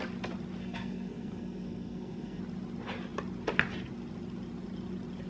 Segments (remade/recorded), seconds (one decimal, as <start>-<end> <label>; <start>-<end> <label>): 0.0-0.6 recorded; 0.6-2.4 remade; 2.4-5.3 recorded